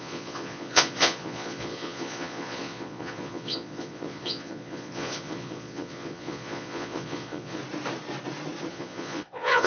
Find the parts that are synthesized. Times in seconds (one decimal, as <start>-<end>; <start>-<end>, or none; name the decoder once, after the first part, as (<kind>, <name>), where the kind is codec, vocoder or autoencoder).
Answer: 0.0-7.6 (vocoder, Vocos); 8.7-9.7